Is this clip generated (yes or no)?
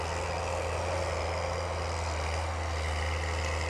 no